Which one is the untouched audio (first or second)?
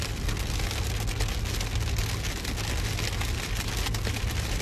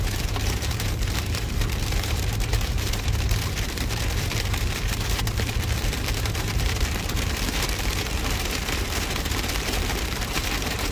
first